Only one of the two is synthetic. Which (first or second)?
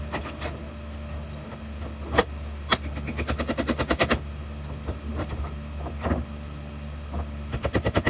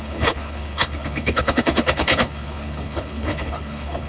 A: second